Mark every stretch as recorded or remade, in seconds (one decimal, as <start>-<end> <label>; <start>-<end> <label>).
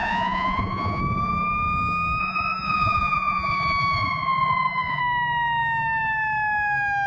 0.0-1.0 remade; 1.0-2.2 recorded; 2.2-5.0 remade; 5.0-7.1 recorded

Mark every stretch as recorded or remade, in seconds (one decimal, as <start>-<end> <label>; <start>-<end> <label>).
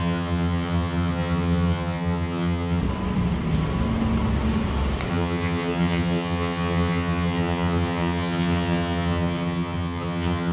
0.0-2.8 remade; 2.8-5.1 recorded; 5.1-10.5 remade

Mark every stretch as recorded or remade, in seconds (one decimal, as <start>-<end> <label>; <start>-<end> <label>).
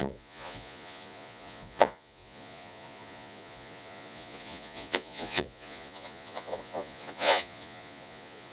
0.0-8.5 remade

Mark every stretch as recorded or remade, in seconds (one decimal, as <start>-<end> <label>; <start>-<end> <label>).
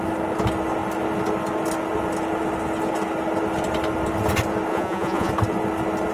0.0-4.7 recorded; 4.7-5.3 remade; 5.3-6.1 recorded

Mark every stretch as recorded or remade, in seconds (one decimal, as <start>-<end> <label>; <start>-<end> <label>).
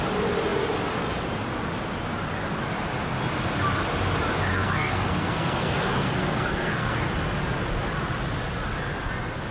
0.0-4.5 recorded; 4.5-7.1 remade; 7.1-9.5 recorded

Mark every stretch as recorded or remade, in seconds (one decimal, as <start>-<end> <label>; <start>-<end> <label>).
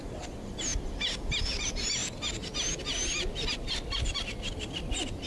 0.0-0.7 remade; 0.7-1.4 recorded; 1.4-2.0 remade; 2.0-5.3 recorded